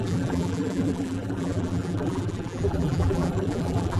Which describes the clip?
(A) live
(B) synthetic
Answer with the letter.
B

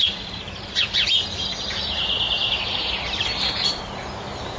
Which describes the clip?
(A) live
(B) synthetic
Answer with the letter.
B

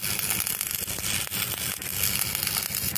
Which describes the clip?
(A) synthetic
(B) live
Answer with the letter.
B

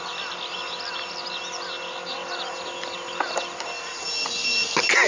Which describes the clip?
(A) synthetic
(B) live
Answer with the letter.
B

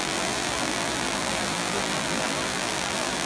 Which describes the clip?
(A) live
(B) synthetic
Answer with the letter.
B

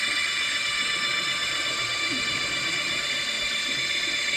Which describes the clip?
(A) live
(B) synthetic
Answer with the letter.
A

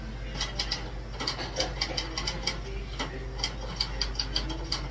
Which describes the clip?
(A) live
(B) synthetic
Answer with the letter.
A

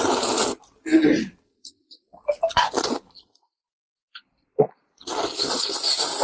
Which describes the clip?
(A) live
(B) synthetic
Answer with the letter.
A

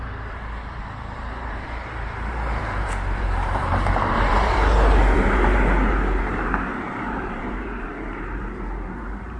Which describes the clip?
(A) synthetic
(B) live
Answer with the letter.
A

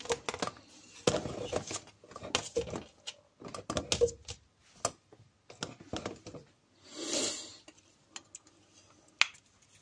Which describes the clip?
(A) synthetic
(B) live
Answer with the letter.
B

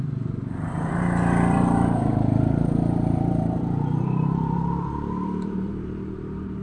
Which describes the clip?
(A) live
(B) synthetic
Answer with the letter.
B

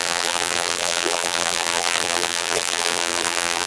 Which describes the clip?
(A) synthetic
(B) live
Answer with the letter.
A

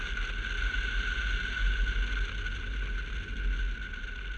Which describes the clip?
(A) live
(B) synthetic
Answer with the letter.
A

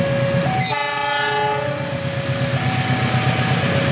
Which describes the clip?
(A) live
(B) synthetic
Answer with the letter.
A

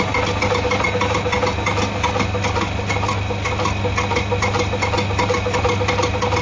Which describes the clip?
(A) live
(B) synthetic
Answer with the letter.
A